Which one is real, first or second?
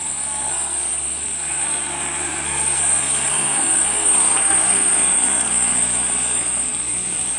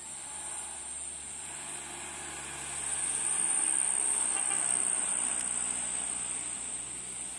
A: second